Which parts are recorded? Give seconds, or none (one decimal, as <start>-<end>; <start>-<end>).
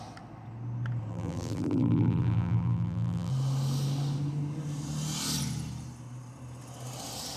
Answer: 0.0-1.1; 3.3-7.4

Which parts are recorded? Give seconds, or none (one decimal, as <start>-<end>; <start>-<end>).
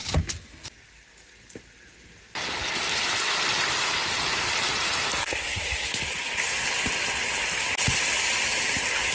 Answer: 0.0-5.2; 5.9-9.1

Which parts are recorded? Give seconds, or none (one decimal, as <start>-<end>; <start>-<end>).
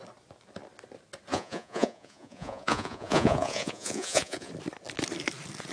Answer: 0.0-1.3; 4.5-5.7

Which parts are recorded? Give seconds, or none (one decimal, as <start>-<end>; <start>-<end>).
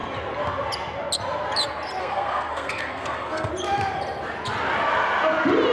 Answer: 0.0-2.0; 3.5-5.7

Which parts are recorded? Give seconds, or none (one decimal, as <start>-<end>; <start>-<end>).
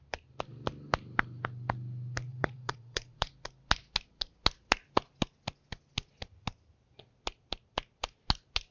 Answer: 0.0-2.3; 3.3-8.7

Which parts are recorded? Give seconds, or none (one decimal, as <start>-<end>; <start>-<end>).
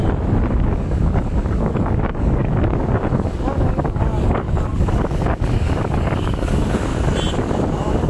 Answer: 0.0-0.5; 6.9-7.4